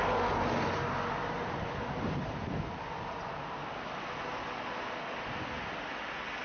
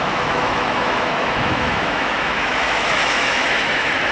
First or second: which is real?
first